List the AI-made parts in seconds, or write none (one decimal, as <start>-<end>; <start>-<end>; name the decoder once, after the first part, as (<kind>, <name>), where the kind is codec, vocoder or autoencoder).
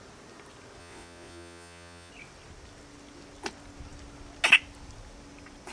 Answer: 0.8-2.1 (vocoder, Vocos)